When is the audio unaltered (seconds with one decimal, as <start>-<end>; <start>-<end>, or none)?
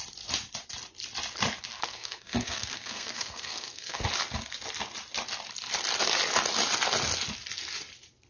0.0-1.7; 4.0-8.3